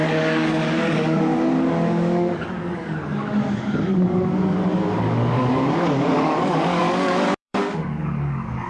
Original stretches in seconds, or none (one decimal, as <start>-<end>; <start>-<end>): none